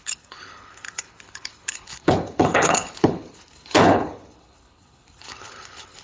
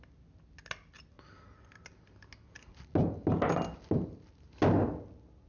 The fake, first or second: first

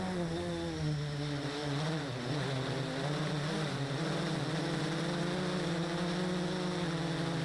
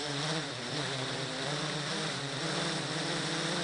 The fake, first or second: second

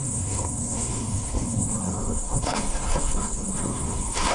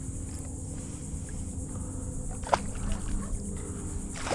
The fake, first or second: first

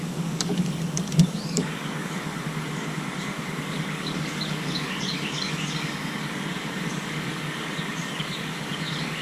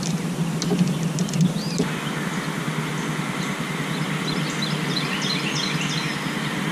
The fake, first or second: first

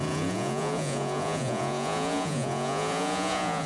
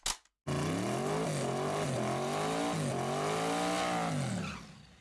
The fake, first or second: first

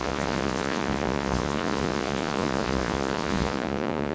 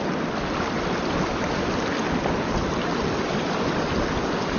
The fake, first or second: first